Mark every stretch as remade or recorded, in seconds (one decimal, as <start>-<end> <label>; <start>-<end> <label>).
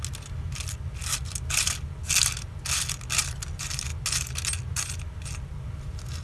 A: 0.0-6.2 recorded